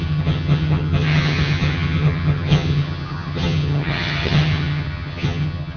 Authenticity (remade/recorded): remade